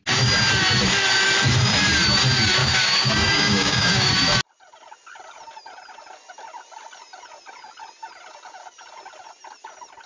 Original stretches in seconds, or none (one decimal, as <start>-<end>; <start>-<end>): 0.0-2.6; 4.1-10.1